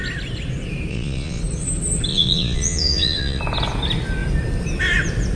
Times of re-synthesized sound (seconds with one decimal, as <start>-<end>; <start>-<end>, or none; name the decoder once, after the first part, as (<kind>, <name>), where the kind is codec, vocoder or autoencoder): 0.9-1.4 (vocoder, Vocos); 2.1-3.4